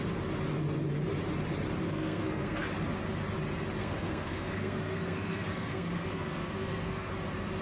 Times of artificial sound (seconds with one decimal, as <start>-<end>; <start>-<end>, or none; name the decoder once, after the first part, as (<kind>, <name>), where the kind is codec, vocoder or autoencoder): 1.8-2.6 (codec, SNAC); 3.8-7.1